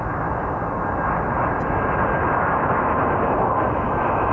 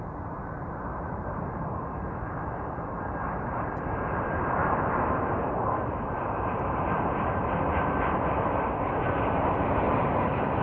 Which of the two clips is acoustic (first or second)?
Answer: first